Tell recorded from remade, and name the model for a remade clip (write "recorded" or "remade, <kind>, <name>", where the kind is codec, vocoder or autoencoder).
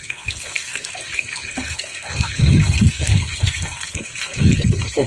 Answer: remade, codec, SNAC